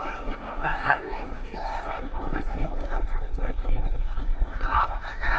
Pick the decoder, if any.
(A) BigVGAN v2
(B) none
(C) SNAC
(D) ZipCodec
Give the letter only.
C